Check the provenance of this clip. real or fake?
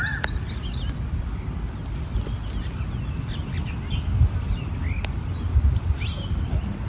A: real